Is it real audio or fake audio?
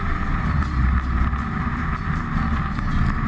fake